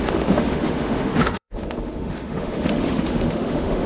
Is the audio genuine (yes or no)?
no